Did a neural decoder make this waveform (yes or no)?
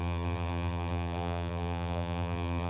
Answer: yes